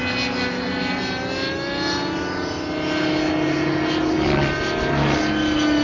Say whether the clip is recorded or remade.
recorded